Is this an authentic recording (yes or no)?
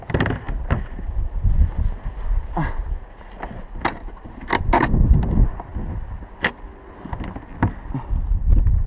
yes